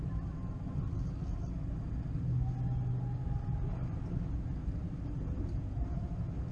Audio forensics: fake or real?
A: real